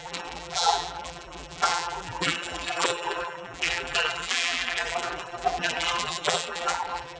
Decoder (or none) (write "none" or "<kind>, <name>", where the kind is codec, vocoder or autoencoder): vocoder, BigVGAN v2